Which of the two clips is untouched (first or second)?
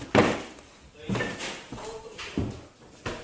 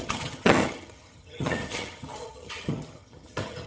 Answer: first